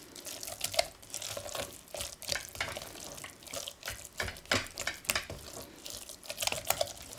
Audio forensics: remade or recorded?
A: recorded